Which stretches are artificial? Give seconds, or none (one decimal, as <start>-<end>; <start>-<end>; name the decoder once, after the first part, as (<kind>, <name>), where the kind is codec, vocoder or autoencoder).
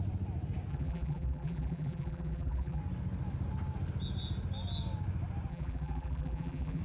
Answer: 0.7-2.8 (vocoder, BigVGAN v2); 5.5-6.8